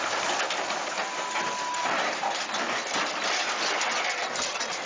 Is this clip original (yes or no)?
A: yes